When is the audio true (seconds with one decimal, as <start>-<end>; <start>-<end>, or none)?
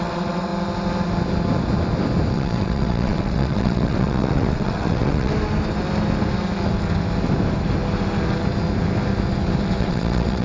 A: 0.5-2.3; 5.3-9.8